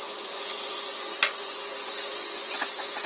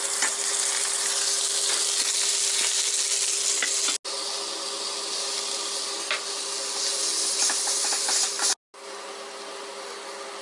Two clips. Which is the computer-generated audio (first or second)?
first